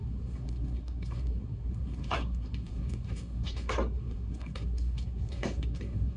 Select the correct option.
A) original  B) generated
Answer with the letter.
B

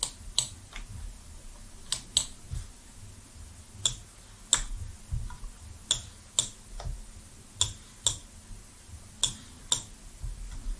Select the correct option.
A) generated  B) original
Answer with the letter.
B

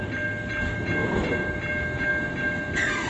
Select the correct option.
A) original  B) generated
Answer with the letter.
A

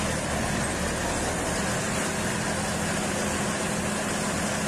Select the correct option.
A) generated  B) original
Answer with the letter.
B